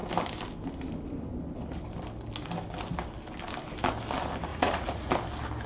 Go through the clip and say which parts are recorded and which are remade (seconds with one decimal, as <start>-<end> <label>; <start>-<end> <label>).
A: 0.0-4.5 recorded; 4.5-5.1 remade; 5.1-5.7 recorded